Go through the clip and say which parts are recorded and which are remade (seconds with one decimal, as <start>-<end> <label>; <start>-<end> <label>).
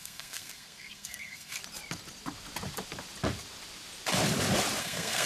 0.0-1.6 remade; 1.6-4.8 recorded; 4.8-5.3 remade